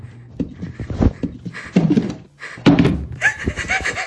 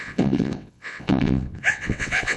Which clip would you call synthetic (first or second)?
second